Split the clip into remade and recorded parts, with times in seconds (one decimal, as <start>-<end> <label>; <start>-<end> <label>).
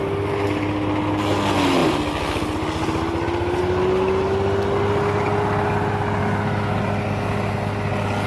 0.0-6.2 recorded; 6.2-6.8 remade; 6.8-8.3 recorded